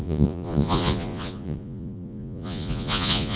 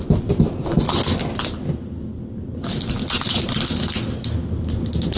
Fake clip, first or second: first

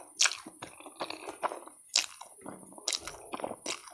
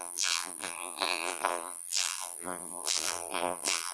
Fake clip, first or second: second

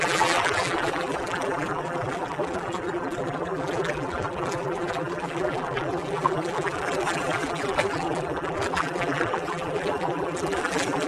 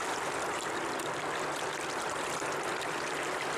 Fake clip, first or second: first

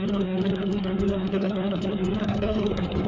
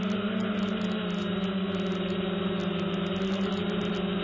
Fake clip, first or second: first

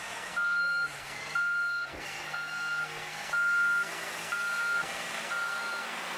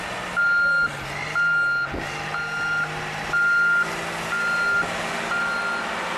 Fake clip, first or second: first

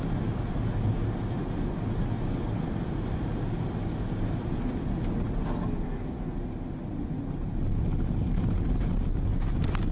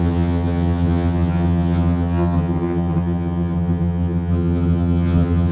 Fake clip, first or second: second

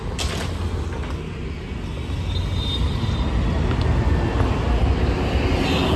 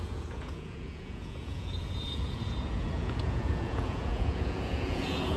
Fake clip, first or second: second